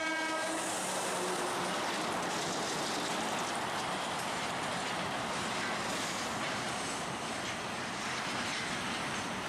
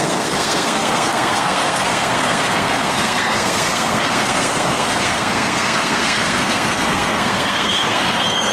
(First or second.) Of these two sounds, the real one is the first